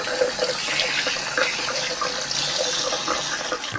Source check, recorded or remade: recorded